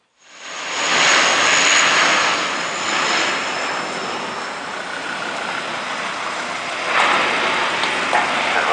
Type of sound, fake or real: real